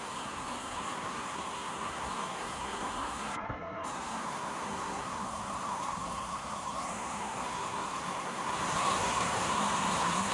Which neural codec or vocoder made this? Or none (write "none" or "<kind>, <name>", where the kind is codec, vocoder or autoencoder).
codec, SNAC